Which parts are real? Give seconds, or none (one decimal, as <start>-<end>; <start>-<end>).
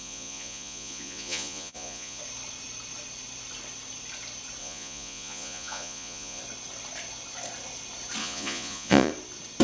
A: 2.2-4.6; 6.4-8.2; 9.1-9.6